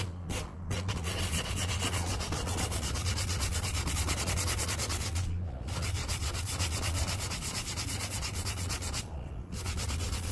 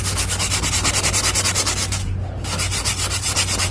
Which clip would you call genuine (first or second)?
second